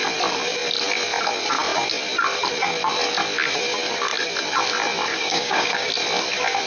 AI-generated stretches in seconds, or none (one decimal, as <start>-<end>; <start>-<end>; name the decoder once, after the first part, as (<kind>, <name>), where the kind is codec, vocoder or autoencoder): 5.1-5.9 (codec, DAC)